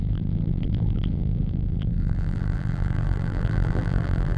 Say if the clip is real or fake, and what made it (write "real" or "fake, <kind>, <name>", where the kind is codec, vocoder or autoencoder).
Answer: fake, vocoder, BigVGAN v2